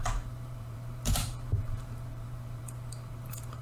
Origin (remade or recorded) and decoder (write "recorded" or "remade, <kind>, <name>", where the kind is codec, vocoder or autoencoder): remade, vocoder, BigVGAN v2